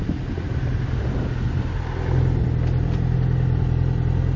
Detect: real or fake real